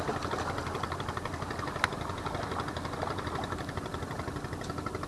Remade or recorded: recorded